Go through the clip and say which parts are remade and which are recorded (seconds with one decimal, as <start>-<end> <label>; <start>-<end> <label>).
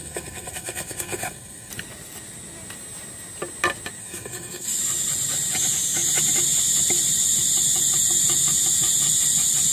0.0-1.7 remade; 1.7-4.0 recorded; 4.0-4.8 remade; 4.8-9.7 recorded